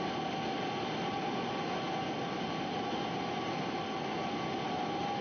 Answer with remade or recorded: recorded